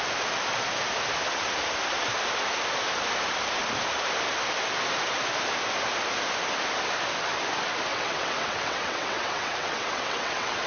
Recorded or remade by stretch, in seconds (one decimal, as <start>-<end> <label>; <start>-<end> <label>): 0.0-7.9 recorded; 7.9-10.7 remade